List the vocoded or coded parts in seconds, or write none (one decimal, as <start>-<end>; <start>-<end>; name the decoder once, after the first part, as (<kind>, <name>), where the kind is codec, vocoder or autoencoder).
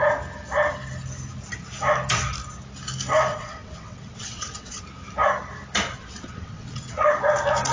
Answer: 3.3-4.8 (vocoder, WaveNeXt); 6.0-7.1